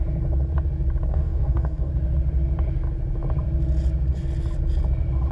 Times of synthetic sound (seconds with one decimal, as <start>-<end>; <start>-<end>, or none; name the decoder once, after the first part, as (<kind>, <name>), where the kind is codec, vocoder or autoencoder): 1.1-1.9 (codec, DAC)